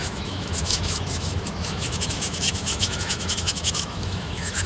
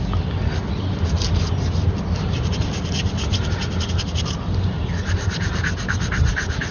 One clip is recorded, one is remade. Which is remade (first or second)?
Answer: first